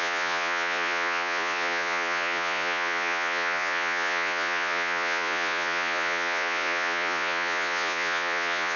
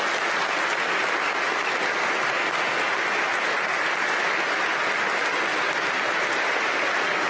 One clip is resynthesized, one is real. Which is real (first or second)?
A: second